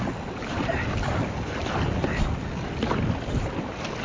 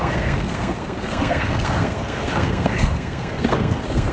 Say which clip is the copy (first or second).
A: second